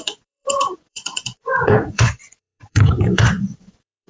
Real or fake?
fake